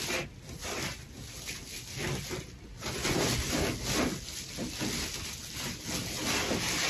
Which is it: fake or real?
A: real